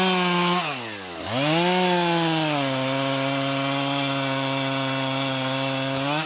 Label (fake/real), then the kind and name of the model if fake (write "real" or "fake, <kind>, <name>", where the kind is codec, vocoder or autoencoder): real